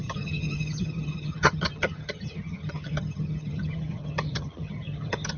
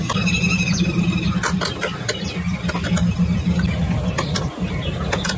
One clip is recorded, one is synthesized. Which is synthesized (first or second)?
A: first